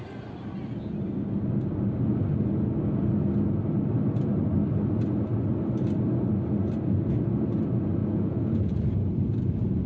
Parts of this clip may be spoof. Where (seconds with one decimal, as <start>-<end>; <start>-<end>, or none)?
8.0-8.8